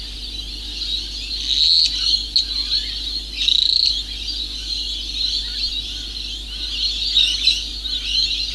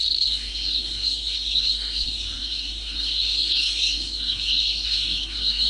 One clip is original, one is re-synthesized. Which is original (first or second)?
first